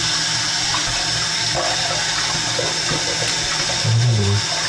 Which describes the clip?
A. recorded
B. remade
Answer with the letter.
A